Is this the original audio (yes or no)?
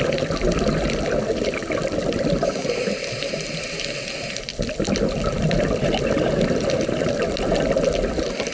yes